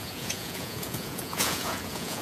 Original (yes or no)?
no